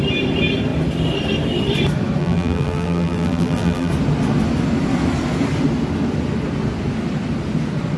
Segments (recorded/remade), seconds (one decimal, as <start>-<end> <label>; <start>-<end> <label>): 0.0-2.2 recorded; 2.2-3.9 remade; 3.9-8.0 recorded